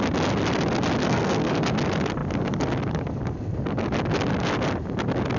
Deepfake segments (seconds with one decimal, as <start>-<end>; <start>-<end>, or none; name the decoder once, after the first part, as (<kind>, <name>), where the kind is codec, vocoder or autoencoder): 1.0-1.5 (codec, SNAC)